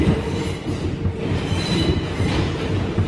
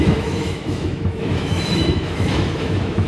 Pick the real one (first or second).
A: first